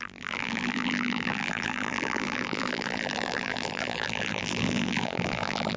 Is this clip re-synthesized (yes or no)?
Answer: yes